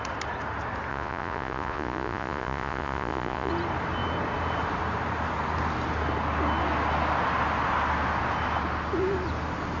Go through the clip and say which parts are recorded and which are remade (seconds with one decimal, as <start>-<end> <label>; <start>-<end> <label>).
0.0-0.9 recorded; 0.9-3.5 remade; 3.5-9.8 recorded